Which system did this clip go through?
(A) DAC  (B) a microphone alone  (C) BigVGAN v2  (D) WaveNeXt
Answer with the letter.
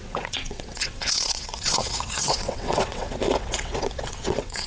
D